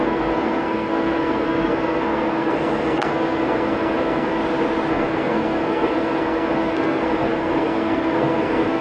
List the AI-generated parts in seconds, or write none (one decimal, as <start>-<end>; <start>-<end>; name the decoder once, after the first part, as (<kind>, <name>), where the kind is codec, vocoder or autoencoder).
0.0-4.4 (codec, SNAC); 4.9-8.8